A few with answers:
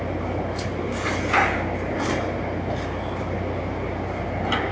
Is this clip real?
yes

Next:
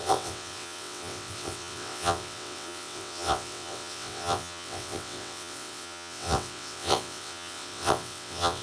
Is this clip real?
no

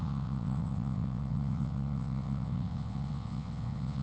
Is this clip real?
no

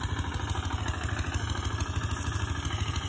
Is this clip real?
yes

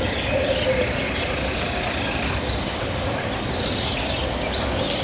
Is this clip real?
yes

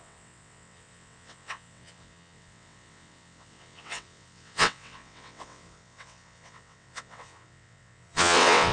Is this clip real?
no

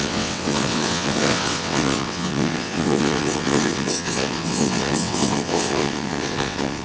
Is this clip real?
no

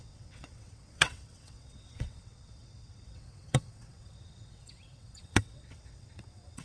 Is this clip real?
no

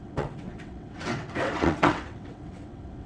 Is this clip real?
no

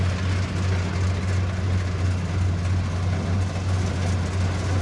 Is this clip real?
yes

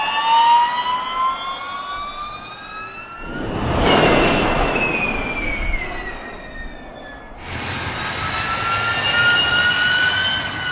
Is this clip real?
yes